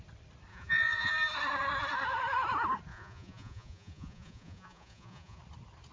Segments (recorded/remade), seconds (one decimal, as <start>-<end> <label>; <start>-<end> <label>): 0.0-0.5 recorded; 0.5-1.1 remade; 1.1-2.9 recorded; 2.9-5.4 remade; 5.4-5.9 recorded